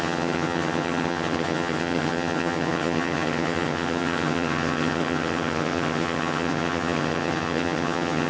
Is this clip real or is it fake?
fake